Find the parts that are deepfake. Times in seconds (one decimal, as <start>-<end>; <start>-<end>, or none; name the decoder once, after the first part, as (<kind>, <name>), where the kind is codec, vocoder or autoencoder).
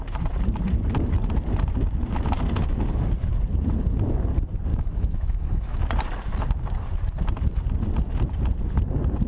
4.7-5.8 (autoencoder, DAC-VAE)